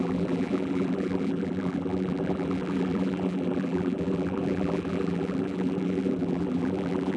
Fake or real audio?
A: fake